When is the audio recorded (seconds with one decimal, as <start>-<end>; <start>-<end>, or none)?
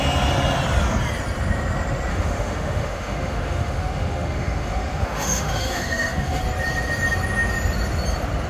0.0-2.1; 6.4-8.5